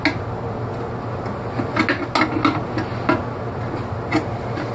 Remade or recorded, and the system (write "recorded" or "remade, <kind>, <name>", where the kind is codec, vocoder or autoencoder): recorded